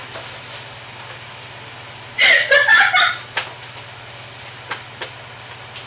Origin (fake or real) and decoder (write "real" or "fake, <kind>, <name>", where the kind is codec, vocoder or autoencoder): real